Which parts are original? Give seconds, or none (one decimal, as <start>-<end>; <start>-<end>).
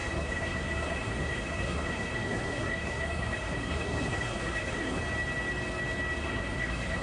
5.0-6.2